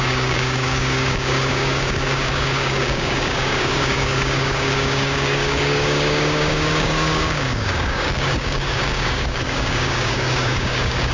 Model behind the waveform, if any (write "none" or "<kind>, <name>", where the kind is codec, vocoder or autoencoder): codec, DAC